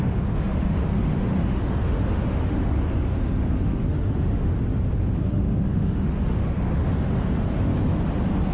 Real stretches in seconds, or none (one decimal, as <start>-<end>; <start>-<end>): 4.5-5.2; 7.7-8.5